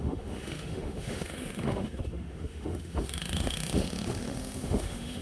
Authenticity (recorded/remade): remade